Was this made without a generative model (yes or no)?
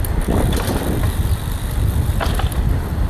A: no